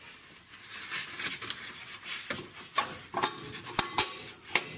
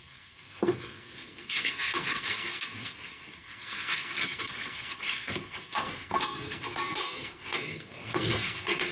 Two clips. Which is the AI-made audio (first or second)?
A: second